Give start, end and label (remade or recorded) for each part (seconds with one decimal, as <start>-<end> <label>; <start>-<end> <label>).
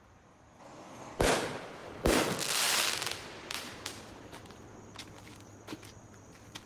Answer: 0.0-0.6 recorded; 0.6-1.2 remade; 1.2-6.7 recorded